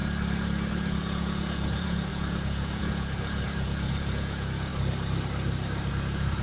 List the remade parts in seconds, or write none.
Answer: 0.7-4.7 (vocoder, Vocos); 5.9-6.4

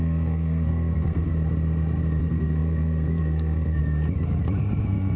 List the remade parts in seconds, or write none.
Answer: 0.0-1.3 (codec, SNAC); 2.2-3.8; 4.8-5.2